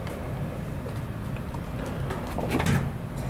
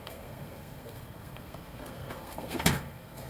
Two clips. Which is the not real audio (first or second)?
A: second